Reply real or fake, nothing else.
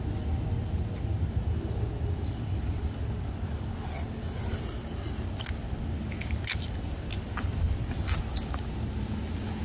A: real